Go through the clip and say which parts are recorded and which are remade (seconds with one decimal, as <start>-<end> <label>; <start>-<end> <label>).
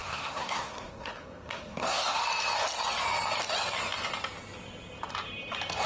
0.0-2.2 remade; 2.2-5.9 recorded